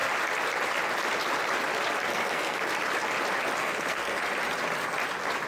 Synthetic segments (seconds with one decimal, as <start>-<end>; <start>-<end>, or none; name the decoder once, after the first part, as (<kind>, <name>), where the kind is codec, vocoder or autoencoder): 2.1-2.6 (codec, SNAC); 3.6-4.2